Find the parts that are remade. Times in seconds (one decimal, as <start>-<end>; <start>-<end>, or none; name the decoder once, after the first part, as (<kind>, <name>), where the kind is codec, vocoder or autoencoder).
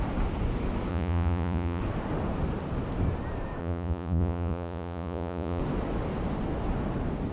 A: 0.9-1.8 (vocoder, Vocos); 3.6-5.6